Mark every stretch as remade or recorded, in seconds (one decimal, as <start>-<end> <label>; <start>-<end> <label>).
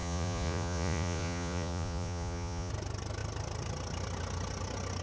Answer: 0.0-2.7 remade; 2.7-5.0 recorded